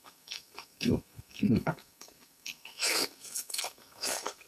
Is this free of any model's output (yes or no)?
no